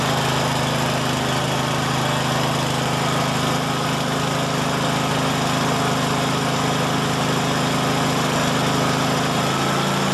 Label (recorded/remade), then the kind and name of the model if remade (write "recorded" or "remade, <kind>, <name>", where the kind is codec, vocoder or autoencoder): recorded